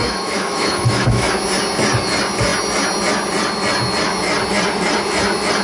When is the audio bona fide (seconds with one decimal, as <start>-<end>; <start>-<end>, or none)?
1.3-5.6